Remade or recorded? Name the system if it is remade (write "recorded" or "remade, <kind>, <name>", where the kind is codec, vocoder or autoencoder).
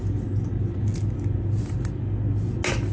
recorded